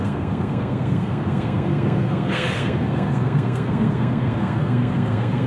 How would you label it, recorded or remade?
remade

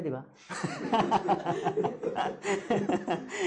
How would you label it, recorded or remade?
recorded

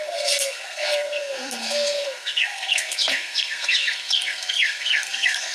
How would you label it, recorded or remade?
remade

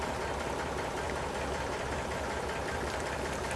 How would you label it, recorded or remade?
recorded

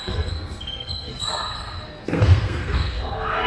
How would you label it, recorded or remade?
remade